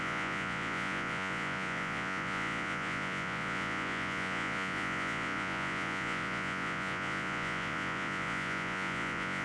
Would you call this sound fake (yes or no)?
yes